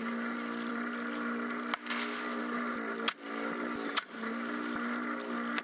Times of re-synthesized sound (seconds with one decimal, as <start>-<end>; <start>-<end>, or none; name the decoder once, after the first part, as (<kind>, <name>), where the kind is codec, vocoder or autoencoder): none